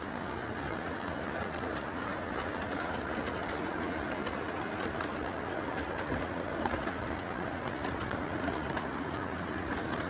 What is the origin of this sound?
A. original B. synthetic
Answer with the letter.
B